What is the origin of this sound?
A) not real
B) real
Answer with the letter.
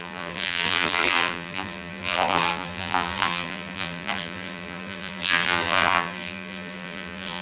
A